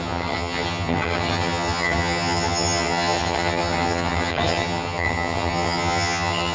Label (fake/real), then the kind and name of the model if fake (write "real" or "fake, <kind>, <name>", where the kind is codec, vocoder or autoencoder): fake, vocoder, HiFi-GAN